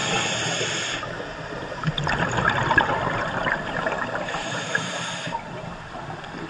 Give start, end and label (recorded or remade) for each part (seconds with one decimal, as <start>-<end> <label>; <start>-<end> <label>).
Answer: 0.0-0.6 remade; 0.6-1.6 recorded; 1.6-5.0 remade; 5.0-6.5 recorded